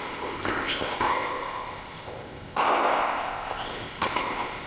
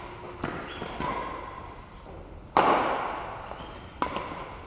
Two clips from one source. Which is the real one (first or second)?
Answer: second